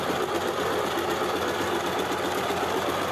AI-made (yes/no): no